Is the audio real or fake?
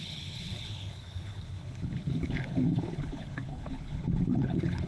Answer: fake